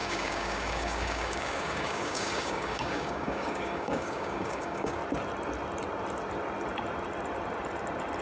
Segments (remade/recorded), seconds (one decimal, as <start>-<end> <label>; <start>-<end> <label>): 0.0-5.0 remade; 5.0-8.2 recorded